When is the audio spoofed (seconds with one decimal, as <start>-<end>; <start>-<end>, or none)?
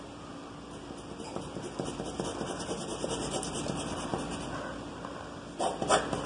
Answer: none